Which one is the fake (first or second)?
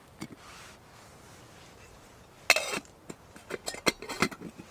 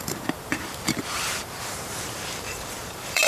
second